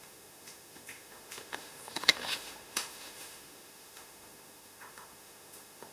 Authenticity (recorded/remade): remade